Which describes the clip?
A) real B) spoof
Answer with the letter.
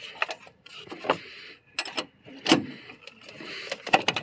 A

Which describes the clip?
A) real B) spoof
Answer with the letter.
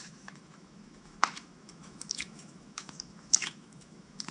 B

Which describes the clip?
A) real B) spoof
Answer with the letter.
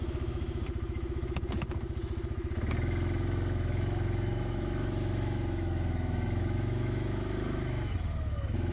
B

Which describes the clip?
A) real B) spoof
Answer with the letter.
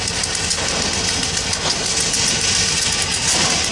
A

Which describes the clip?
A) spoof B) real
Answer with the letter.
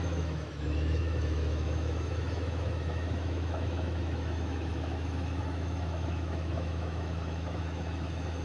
A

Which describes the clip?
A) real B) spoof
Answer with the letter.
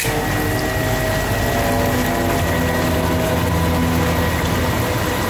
A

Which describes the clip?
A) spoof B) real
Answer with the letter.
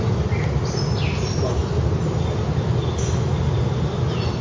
B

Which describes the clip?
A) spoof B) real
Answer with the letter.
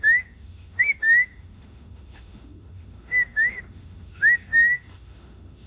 A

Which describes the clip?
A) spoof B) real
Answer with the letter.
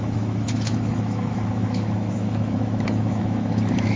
A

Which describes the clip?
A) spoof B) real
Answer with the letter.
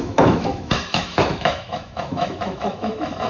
A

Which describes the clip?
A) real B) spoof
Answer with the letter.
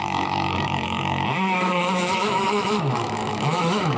B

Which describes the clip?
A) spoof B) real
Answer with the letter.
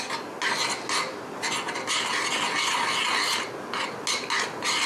B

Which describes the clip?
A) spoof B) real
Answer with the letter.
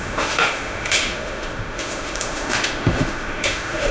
A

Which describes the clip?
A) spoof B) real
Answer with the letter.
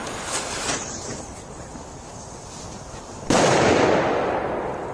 B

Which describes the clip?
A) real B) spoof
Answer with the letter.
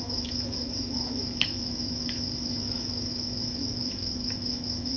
B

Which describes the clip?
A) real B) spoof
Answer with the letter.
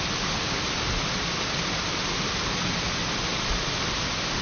A